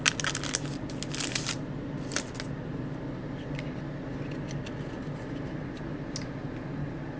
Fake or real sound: real